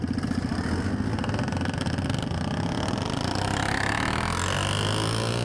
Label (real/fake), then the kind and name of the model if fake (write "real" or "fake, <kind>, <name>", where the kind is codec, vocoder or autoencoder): real